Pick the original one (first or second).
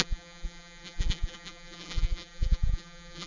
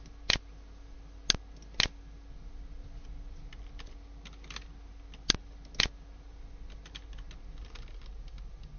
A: second